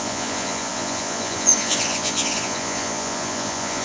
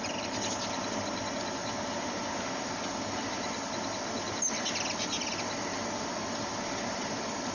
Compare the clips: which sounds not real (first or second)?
first